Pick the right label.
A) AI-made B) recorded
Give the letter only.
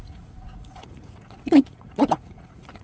A